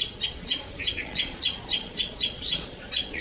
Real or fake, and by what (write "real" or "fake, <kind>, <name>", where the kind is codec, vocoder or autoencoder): fake, vocoder, Vocos